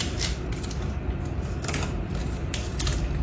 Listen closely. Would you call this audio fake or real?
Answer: real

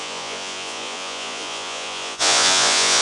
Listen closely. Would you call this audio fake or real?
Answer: fake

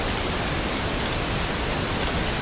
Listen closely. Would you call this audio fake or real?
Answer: real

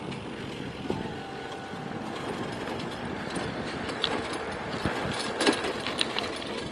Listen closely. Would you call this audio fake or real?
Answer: real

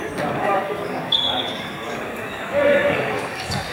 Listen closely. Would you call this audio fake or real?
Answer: fake